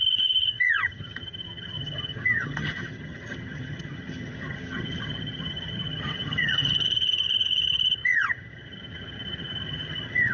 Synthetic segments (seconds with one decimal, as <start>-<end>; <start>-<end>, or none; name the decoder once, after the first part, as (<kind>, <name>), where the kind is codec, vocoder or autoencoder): 0.0-10.3 (vocoder, HiFi-GAN)